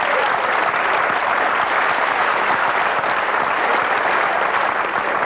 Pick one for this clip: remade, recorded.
recorded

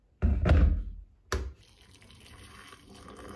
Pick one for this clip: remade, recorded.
recorded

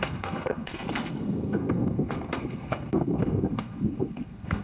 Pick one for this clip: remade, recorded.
remade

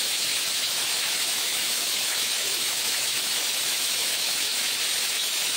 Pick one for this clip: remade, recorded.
remade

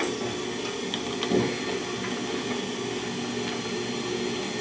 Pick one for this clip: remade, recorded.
recorded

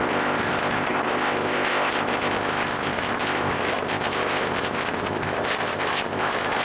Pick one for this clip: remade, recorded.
remade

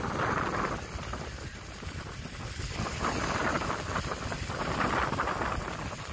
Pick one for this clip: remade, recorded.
recorded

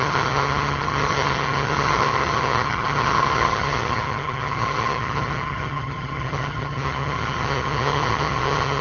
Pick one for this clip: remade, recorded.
remade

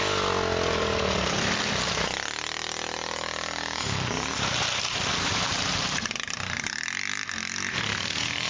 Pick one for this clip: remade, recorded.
recorded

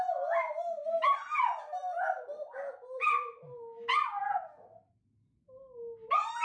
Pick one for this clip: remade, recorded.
recorded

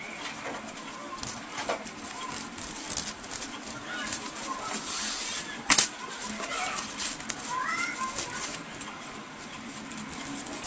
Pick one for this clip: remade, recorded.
recorded